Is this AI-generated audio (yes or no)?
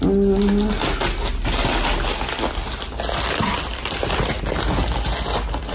no